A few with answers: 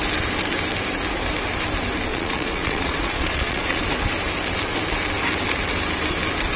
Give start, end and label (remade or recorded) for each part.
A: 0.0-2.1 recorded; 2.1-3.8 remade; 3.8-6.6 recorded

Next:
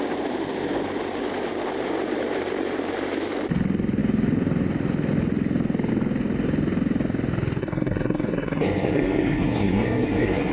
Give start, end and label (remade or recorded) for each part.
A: 0.0-7.6 recorded; 7.6-10.5 remade

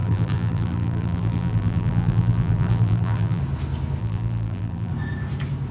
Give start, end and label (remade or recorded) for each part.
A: 0.0-3.4 remade; 3.4-4.0 recorded; 4.0-4.9 remade; 4.9-5.7 recorded

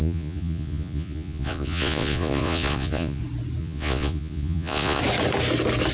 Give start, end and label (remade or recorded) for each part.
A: 0.0-3.2 remade; 3.2-3.6 recorded; 3.6-5.0 remade; 5.0-5.9 recorded